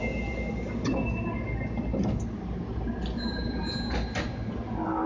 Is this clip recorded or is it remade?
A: recorded